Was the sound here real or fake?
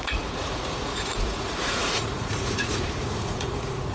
fake